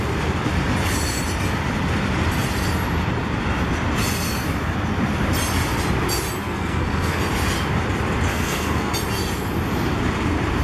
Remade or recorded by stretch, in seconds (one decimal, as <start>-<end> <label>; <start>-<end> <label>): 0.0-6.4 recorded; 6.4-7.2 remade; 7.2-8.3 recorded; 8.3-8.9 remade; 8.9-10.6 recorded